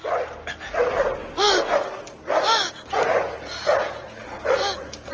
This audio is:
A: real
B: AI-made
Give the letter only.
A